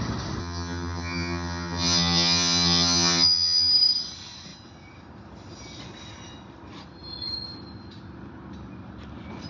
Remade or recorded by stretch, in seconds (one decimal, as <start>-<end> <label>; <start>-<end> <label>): 0.0-0.4 recorded; 0.4-3.7 remade; 3.7-9.5 recorded